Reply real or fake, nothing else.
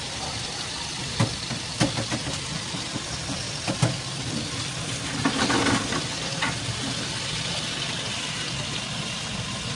real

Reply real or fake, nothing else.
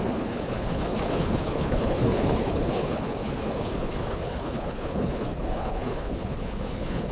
fake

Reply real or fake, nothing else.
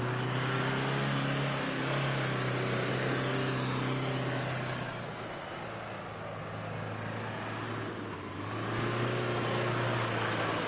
real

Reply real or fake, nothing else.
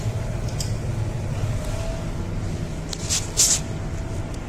real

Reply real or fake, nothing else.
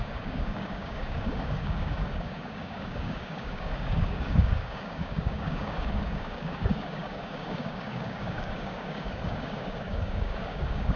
fake